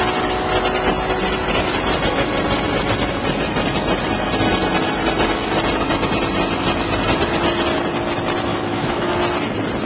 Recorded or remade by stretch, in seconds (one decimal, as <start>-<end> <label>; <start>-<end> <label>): 0.0-8.5 recorded; 8.5-9.2 remade; 9.2-9.9 recorded